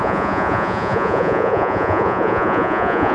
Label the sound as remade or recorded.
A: remade